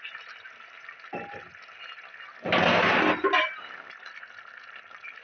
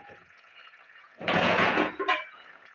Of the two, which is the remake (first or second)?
second